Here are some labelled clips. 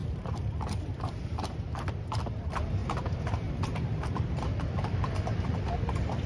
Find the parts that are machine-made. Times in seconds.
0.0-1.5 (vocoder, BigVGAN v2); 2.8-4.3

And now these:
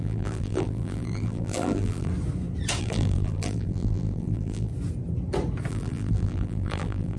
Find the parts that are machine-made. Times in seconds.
0.0-2.1 (vocoder, BigVGAN v2); 2.8-4.7; 5.7-7.2

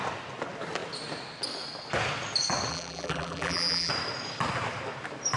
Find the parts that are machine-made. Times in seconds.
2.7-3.9 (vocoder, BigVGAN v2)

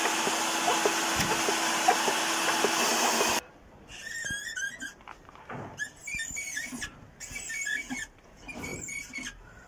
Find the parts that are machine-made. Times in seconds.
2.9-4.6 (vocoder, BigVGAN v2); 6.0-6.7; 8.7-9.7

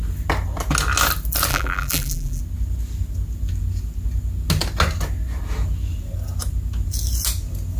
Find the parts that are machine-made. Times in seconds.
1.5-2.4 (vocoder, BigVGAN v2)

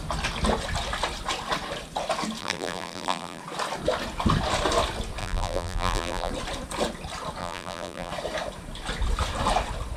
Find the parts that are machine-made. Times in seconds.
2.4-3.4 (vocoder, BigVGAN v2); 5.2-6.3; 7.4-8.1

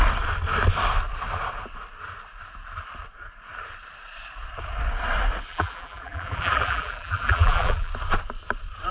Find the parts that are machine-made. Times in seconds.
5.5-7.9 (vocoder, BigVGAN v2)

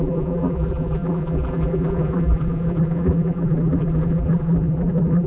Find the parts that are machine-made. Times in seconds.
0.0-5.3 (vocoder, BigVGAN v2)